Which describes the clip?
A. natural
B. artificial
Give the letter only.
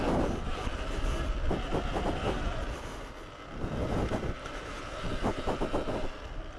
A